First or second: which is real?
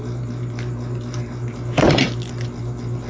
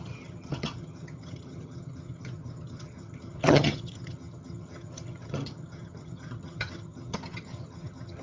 first